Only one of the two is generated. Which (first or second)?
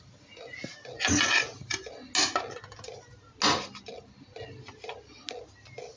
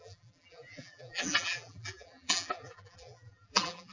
second